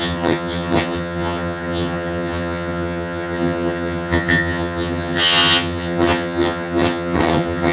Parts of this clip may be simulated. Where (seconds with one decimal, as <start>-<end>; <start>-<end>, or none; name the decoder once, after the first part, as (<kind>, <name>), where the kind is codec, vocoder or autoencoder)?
0.0-7.7 (vocoder, HiFi-GAN)